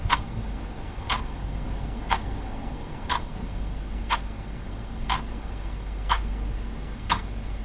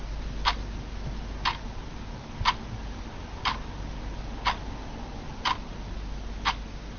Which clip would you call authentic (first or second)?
second